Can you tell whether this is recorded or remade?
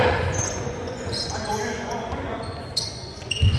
remade